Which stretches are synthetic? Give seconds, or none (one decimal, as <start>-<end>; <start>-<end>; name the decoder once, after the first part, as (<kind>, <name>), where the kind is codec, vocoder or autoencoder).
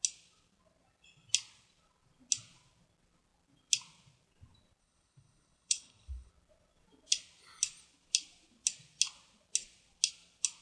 4.8-6.3 (codec, HILCodec)